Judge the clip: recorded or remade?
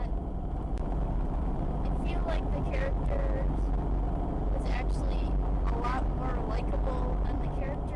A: recorded